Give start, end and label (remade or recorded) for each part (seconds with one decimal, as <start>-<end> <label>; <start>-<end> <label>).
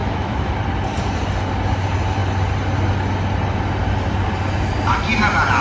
0.0-0.5 remade; 0.5-5.6 recorded